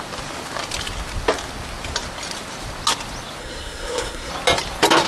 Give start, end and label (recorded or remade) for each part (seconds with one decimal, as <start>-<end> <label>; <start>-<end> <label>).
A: 0.0-3.4 recorded; 3.4-4.3 remade; 4.3-5.1 recorded